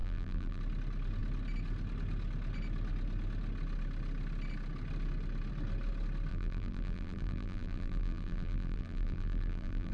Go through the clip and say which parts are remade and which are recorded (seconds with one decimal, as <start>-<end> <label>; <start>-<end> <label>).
0.0-0.6 remade; 0.6-6.3 recorded; 6.3-9.9 remade